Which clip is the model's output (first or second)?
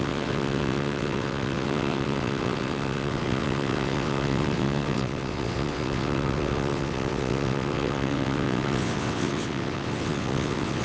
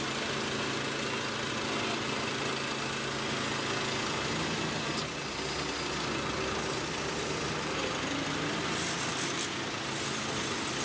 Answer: first